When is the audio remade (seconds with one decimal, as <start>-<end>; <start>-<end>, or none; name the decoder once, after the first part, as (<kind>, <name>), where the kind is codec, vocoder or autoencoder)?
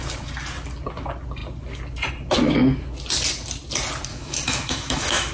4.1-5.3 (autoencoder, DAC-VAE)